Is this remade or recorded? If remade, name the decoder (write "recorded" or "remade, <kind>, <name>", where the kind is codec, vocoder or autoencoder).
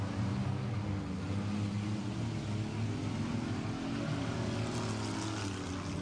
recorded